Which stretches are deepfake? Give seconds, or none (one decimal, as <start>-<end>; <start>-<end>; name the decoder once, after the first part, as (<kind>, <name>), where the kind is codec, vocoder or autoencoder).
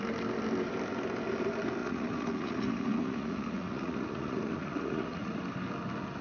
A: 1.8-5.4 (vocoder, Vocos)